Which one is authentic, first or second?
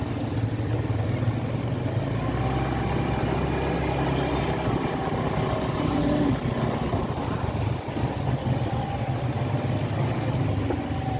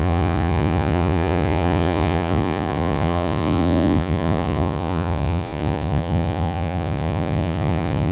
first